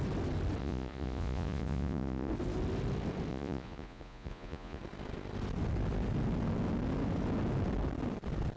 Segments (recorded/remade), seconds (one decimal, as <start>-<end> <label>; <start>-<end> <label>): 0.0-0.6 recorded; 0.6-2.3 remade; 2.3-3.3 recorded; 3.3-4.8 remade; 4.8-8.6 recorded